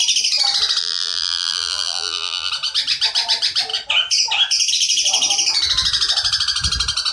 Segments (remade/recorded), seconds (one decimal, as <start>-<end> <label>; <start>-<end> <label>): 0.0-0.8 recorded; 0.8-2.5 remade; 2.5-7.1 recorded